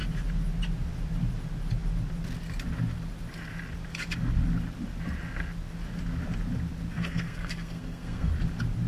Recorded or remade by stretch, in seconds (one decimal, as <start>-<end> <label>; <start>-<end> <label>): 0.0-6.9 recorded; 6.9-8.3 remade; 8.3-8.9 recorded